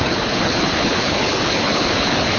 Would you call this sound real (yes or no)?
no